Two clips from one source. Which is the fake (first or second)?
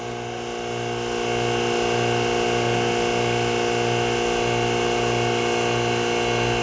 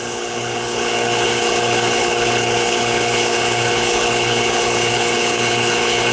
second